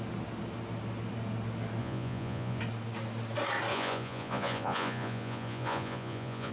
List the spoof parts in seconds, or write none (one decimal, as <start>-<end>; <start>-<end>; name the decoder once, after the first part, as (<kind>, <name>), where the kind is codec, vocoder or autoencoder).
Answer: 1.8-2.6 (vocoder, Vocos); 3.7-6.5